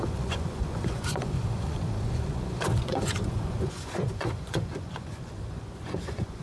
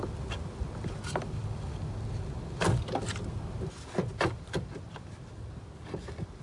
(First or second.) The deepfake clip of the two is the first